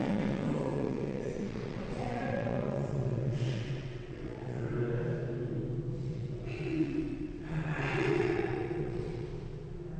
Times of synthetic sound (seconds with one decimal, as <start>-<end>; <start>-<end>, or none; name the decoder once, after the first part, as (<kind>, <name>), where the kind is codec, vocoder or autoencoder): 0.0-4.7 (vocoder, WaveNeXt); 6.0-9.3